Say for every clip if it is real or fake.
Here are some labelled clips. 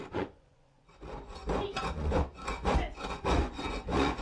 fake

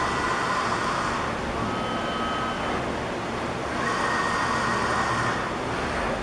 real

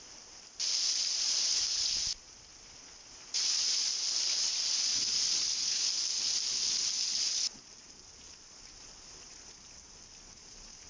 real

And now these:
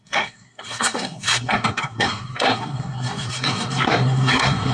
fake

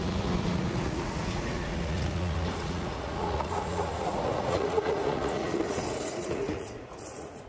fake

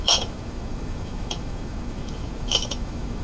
fake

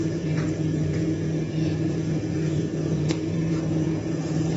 fake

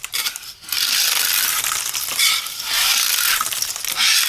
fake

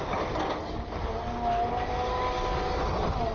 real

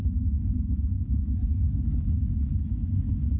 real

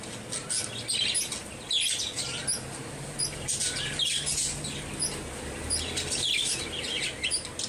real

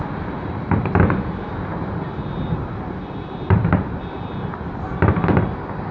real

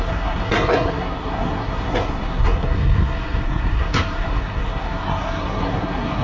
fake